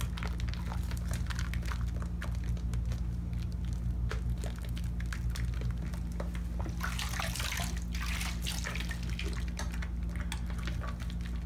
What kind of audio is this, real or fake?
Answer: real